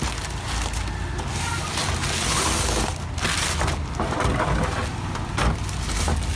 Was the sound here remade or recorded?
recorded